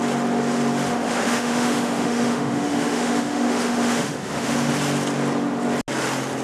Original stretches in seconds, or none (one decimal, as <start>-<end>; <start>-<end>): 0.0-0.9; 4.7-6.4

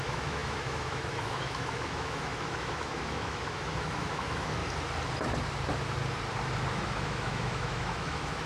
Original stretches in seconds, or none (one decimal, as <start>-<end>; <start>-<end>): 4.6-6.7

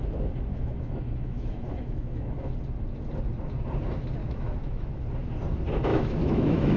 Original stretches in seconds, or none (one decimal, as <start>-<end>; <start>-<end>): 0.0-0.5; 2.5-4.2; 5.0-5.9

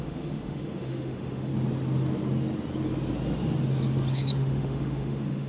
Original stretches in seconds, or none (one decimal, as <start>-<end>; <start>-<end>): 1.5-4.1

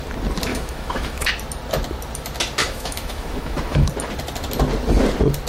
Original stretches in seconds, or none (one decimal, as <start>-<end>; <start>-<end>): 0.0-0.5; 1.3-2.6; 3.9-5.5

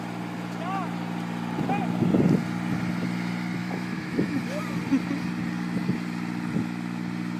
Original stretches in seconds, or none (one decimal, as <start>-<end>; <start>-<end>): 0.0-3.6; 4.4-7.4